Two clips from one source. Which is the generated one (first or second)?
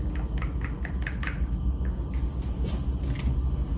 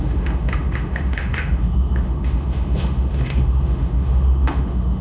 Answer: second